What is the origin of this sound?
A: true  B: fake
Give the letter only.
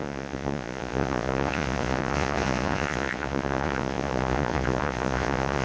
B